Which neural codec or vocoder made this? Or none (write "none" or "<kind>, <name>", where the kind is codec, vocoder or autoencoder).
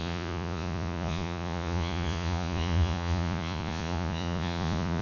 vocoder, Vocos